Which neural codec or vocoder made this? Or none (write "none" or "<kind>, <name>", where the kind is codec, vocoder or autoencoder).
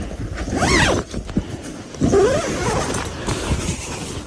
none